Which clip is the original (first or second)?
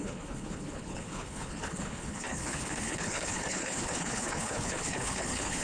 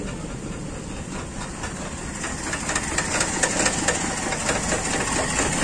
second